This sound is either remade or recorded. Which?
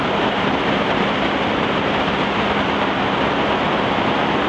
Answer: remade